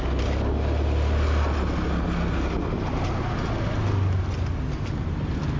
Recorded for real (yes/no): yes